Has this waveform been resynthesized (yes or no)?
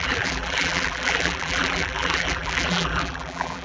yes